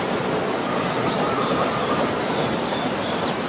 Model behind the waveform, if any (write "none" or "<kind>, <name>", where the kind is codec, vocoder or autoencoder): none